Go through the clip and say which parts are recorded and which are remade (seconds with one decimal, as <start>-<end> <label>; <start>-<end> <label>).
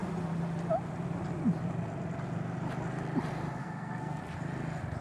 0.0-3.6 recorded; 3.6-4.2 remade; 4.2-5.0 recorded